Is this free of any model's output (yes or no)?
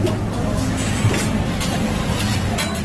yes